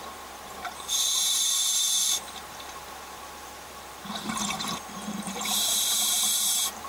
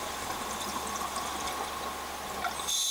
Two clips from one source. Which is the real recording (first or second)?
second